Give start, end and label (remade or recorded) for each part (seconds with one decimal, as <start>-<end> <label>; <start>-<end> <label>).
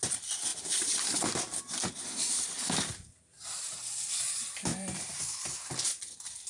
0.0-4.7 recorded; 4.7-5.2 remade; 5.2-6.5 recorded